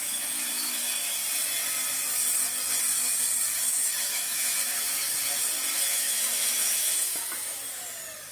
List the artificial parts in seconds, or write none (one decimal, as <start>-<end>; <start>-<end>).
0.0-1.2; 3.7-5.1; 5.7-7.6